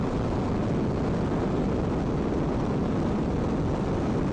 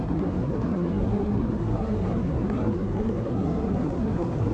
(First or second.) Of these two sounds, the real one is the first